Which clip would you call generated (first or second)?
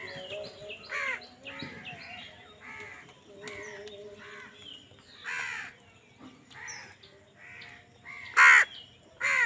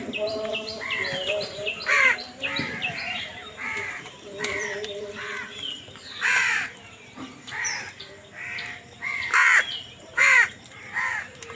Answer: second